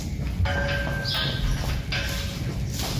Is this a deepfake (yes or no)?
no